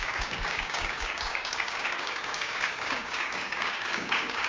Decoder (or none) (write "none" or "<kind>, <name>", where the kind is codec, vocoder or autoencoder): codec, DAC